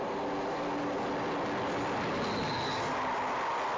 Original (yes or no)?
yes